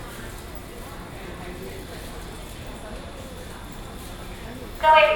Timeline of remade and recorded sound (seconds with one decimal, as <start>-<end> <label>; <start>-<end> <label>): 0.0-5.2 recorded

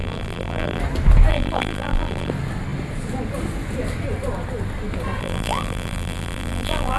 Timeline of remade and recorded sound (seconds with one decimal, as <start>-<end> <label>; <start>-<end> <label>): 0.0-0.8 remade; 0.8-1.3 recorded; 1.3-2.3 remade; 2.3-5.2 recorded; 5.2-7.0 remade

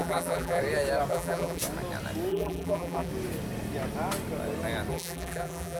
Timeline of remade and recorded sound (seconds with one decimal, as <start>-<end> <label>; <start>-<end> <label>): 0.0-0.6 remade; 0.6-1.1 recorded; 1.1-1.6 remade; 1.6-2.3 recorded; 2.3-3.1 remade; 3.1-4.9 recorded; 4.9-5.8 remade

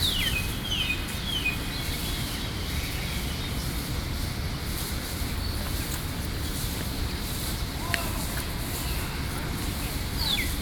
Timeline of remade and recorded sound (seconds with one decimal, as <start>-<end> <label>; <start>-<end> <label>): 0.0-2.0 recorded; 2.0-2.7 remade; 2.7-6.5 recorded; 6.5-7.9 remade; 7.9-10.6 recorded

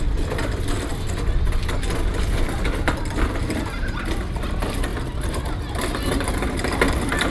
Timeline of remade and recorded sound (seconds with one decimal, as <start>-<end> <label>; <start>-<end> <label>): 0.0-0.9 remade; 0.9-2.9 recorded; 2.9-7.3 remade

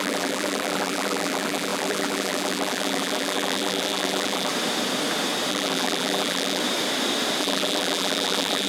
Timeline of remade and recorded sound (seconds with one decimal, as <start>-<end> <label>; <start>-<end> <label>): 0.0-4.5 remade; 4.5-5.5 recorded; 5.5-6.6 remade; 6.6-7.4 recorded; 7.4-8.7 remade

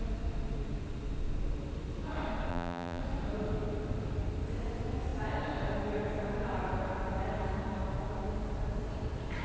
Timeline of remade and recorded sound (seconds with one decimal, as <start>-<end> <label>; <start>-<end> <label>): 0.0-2.5 recorded; 2.5-3.0 remade; 3.0-9.4 recorded